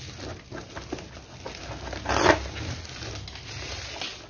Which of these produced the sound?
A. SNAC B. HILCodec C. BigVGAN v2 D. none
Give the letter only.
D